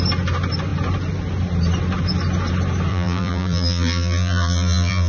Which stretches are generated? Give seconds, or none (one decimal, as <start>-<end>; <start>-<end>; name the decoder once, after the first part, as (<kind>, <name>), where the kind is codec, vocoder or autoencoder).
2.9-5.1 (vocoder, BigVGAN v2)